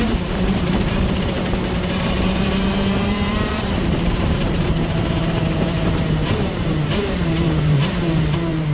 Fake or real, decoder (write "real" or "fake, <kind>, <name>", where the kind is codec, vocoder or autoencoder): fake, vocoder, BigVGAN v2